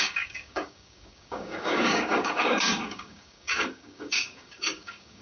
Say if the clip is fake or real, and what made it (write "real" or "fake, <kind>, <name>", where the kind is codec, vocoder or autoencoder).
fake, codec, DAC